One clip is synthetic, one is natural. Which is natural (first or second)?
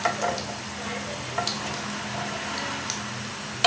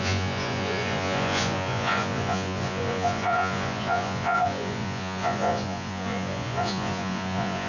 first